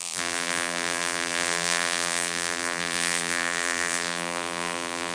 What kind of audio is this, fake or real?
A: fake